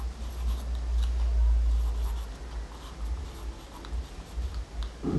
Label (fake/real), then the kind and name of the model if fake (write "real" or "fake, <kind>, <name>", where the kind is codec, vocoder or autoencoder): real